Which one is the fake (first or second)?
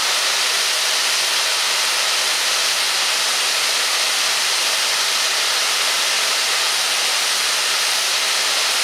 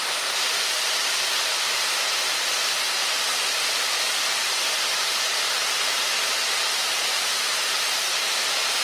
second